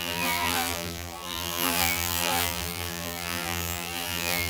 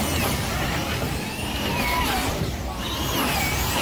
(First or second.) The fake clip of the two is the first